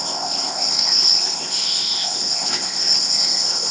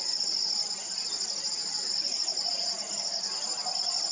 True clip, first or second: second